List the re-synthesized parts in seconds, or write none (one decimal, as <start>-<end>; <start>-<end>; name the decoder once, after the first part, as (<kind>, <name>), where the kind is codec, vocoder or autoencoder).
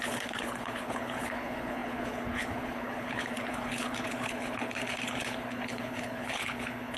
0.0-7.0 (codec, HILCodec)